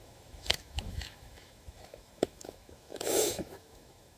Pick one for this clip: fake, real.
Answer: fake